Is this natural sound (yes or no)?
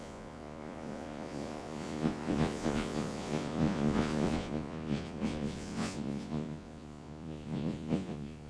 no